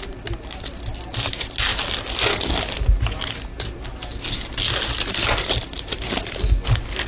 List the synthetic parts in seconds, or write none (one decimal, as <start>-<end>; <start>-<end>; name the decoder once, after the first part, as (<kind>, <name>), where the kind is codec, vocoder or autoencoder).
none